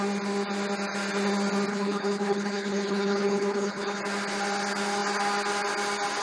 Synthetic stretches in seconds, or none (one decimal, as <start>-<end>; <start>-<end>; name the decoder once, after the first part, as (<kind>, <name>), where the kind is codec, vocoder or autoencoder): 1.7-4.0 (codec, HILCodec)